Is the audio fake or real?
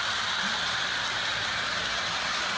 real